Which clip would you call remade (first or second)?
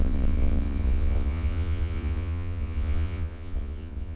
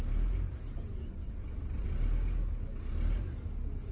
first